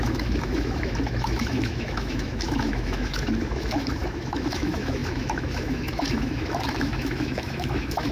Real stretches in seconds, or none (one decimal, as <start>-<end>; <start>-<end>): none